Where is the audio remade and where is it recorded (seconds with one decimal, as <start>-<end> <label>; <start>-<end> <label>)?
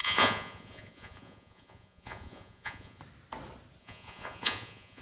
0.0-3.0 remade; 3.0-3.8 recorded; 3.8-5.0 remade